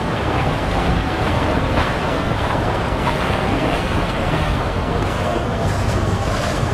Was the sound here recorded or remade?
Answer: remade